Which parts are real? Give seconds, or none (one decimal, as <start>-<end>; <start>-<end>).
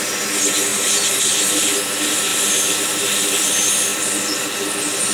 0.0-0.7; 1.2-2.3; 3.5-5.1